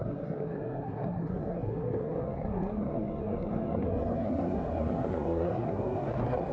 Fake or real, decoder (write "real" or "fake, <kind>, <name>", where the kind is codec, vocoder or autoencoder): fake, codec, SNAC